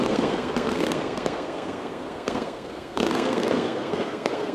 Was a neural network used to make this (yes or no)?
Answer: yes